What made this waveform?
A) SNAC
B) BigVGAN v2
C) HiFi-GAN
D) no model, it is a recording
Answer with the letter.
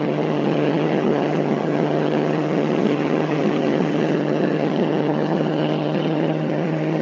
C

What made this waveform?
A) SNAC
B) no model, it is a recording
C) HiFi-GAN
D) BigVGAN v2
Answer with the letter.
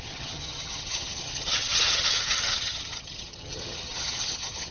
C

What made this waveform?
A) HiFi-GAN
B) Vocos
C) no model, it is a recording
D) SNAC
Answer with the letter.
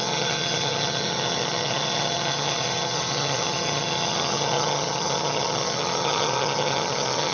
A